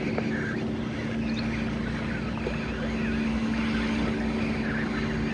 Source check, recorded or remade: recorded